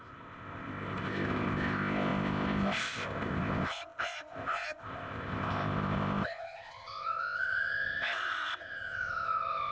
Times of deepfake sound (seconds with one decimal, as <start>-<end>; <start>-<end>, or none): 0.0-9.7